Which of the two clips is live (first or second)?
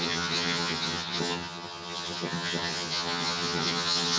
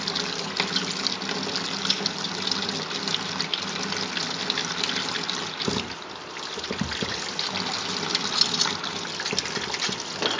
second